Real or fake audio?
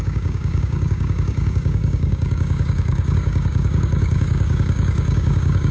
fake